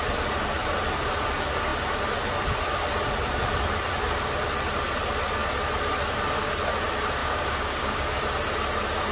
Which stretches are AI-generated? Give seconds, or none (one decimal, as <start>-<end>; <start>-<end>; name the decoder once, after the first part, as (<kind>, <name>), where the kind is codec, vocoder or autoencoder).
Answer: 7.2-8.2 (codec, DAC)